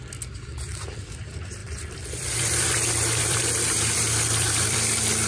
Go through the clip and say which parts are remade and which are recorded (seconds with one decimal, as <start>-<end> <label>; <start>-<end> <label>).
0.0-1.6 recorded; 1.6-4.8 remade; 4.8-5.3 recorded